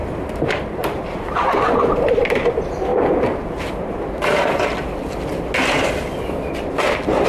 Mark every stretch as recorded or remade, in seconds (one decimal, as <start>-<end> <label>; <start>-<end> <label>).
0.0-2.1 remade; 2.1-7.3 recorded